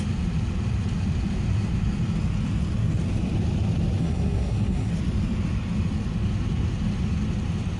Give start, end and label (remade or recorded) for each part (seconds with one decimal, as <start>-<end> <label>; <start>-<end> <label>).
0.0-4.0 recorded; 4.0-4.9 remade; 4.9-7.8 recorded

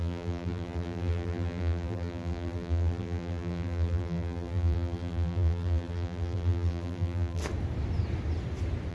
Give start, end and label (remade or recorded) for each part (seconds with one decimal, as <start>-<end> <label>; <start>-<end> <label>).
0.0-7.4 remade; 7.4-8.9 recorded

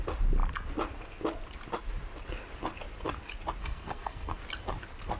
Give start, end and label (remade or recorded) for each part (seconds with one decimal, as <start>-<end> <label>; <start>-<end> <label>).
0.0-3.6 recorded; 3.6-4.4 remade; 4.4-5.2 recorded

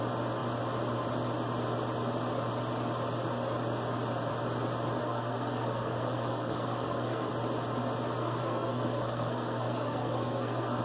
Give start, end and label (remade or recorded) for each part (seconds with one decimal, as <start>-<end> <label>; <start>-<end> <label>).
0.0-5.0 recorded; 5.0-7.3 remade; 7.3-8.2 recorded; 8.2-10.8 remade